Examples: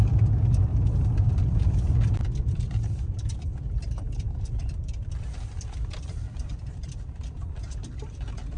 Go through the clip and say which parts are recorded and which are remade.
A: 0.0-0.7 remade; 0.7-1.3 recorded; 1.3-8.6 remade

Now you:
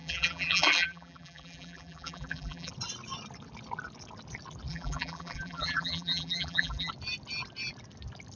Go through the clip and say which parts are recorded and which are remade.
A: 0.0-2.7 remade; 2.7-4.7 recorded; 4.7-6.9 remade; 6.9-8.4 recorded

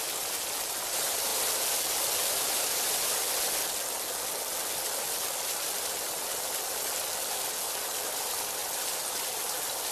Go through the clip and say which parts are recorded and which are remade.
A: 0.0-1.3 recorded; 1.3-3.5 remade; 3.5-8.6 recorded; 8.6-9.9 remade